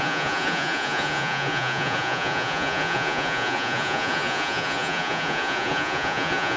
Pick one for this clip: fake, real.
fake